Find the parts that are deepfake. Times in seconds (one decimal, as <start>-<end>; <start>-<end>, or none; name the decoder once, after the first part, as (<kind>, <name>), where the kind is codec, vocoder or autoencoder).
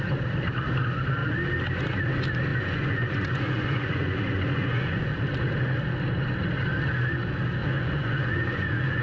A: 2.5-5.1 (vocoder, Vocos); 7.6-9.0